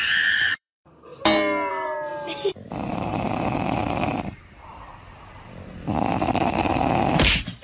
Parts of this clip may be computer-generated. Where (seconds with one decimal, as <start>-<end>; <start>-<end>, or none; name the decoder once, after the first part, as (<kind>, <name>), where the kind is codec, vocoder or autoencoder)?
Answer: 0.0-1.1 (vocoder, BigVGAN v2); 1.7-2.1; 2.9-4.7; 7.1-7.6